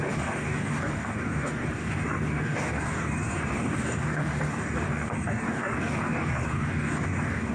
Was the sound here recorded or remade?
remade